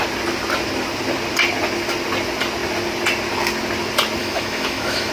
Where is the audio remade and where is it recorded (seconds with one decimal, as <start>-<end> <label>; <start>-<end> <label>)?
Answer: 0.0-4.2 recorded; 4.2-5.1 remade